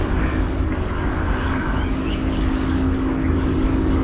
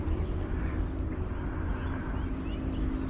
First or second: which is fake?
first